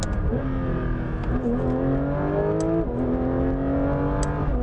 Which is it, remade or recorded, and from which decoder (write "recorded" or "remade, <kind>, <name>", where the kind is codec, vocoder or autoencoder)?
recorded